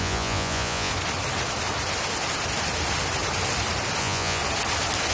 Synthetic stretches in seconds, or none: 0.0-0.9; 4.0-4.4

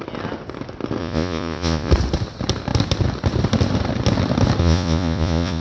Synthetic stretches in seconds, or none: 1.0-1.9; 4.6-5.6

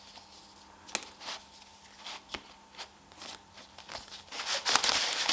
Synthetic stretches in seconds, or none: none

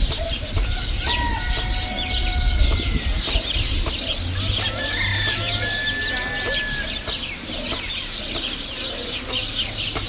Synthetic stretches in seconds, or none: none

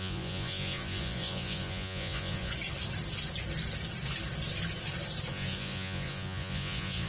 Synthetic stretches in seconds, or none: 0.0-2.5; 5.3-7.1

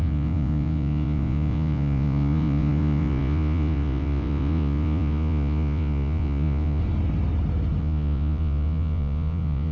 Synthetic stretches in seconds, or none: 0.0-6.8; 7.8-9.7

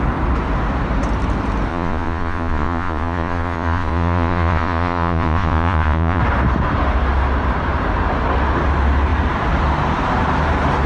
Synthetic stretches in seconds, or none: 1.7-6.2

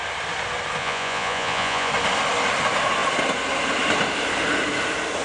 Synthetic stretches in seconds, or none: 0.8-1.9